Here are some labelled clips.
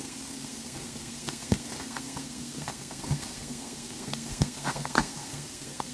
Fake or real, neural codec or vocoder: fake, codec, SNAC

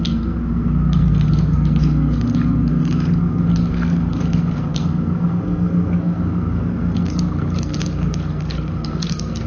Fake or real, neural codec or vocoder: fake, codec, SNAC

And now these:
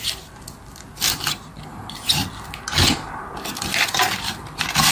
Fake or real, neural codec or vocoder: real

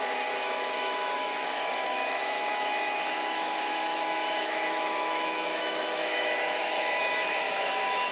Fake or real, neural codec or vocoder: fake, autoencoder, DAC-VAE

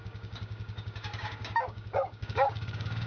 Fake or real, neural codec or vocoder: fake, codec, DAC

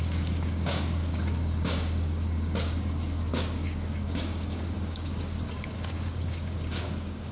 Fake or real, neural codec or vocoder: fake, codec, DAC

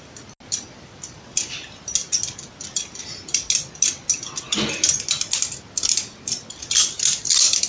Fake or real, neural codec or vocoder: real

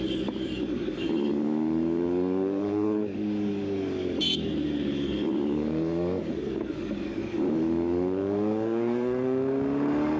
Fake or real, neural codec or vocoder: fake, codec, DAC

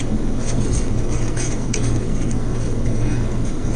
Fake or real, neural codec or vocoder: fake, codec, SNAC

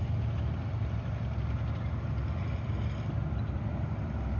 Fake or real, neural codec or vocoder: real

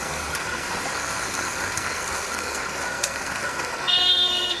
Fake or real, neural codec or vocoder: fake, codec, SNAC